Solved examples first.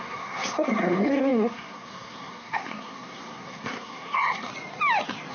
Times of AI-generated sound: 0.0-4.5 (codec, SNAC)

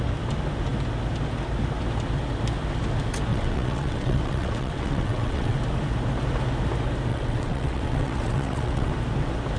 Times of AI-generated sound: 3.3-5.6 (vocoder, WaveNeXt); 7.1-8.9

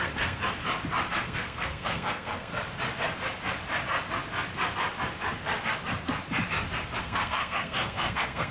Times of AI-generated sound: 0.0-0.4 (codec, SNAC); 1.1-2.5; 7.0-8.5